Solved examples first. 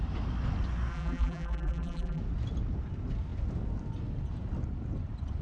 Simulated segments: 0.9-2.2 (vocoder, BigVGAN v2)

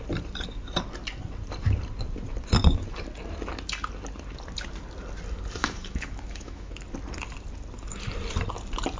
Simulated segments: 5.6-6.7 (autoencoder, DAC-VAE)